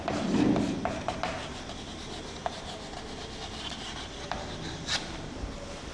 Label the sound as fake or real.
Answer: real